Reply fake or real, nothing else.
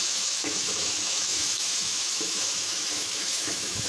fake